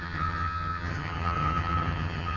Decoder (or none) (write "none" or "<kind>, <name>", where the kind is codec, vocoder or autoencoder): vocoder, HiFi-GAN